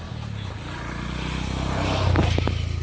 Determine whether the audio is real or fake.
real